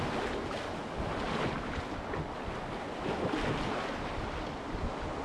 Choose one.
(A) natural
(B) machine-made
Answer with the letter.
A